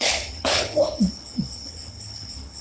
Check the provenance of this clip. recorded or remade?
remade